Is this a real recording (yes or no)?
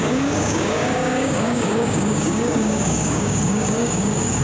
no